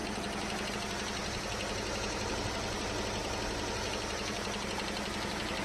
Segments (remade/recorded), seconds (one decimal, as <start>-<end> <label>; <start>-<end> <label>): 0.0-5.6 recorded